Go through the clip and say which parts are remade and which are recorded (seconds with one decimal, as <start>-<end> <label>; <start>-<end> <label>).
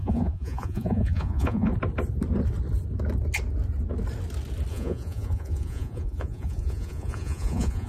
0.0-1.7 remade; 1.7-4.7 recorded; 4.7-7.9 remade